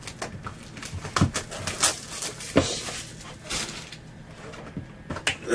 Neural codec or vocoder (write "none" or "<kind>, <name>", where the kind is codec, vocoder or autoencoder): none